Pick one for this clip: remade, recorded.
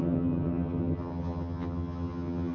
remade